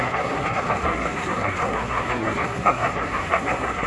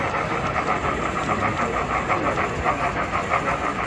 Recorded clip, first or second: second